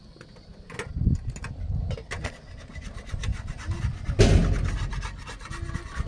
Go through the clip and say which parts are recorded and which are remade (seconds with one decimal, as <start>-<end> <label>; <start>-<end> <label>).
0.0-6.1 recorded